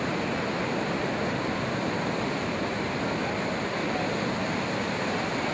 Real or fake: real